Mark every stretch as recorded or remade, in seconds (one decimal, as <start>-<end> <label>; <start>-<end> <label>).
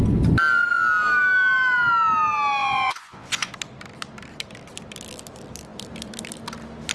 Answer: 0.0-2.6 recorded; 2.6-3.5 remade; 3.5-6.9 recorded